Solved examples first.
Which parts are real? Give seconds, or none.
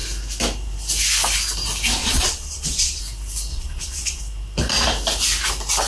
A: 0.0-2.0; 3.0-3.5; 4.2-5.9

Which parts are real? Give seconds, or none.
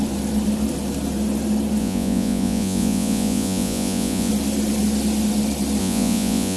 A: 0.0-1.8; 4.3-5.8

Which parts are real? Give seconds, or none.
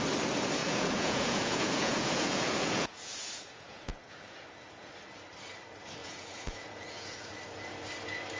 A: 0.0-0.6; 4.9-6.0; 7.3-8.4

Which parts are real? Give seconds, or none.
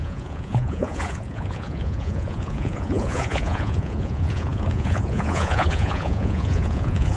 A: none